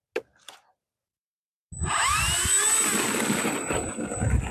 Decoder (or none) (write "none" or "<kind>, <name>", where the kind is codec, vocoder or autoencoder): none